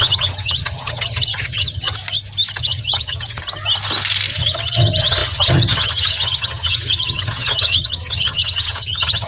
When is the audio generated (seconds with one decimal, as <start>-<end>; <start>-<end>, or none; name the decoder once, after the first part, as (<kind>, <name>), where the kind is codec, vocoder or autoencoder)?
0.0-2.0 (vocoder, HiFi-GAN); 2.6-3.4; 4.3-9.3